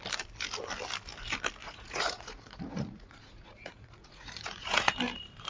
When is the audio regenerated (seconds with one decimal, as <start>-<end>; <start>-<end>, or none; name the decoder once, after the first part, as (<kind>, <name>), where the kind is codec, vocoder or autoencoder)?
1.6-4.9 (vocoder, Vocos)